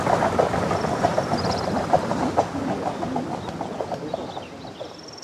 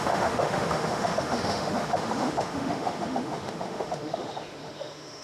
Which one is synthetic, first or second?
second